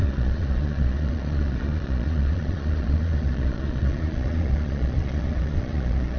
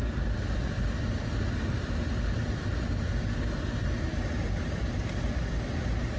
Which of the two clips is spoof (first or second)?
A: first